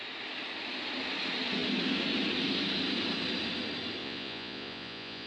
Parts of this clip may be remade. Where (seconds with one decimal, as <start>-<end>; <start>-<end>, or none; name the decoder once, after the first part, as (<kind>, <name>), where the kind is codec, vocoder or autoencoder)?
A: 4.0-5.3 (vocoder, Vocos)